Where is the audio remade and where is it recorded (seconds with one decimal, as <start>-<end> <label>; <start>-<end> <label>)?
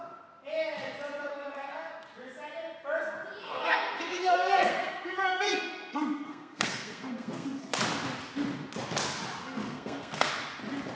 0.0-1.3 recorded; 1.3-1.9 remade; 1.9-3.4 recorded; 3.4-7.7 remade; 7.7-9.4 recorded; 9.4-10.3 remade; 10.3-11.0 recorded